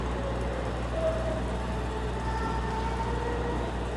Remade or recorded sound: recorded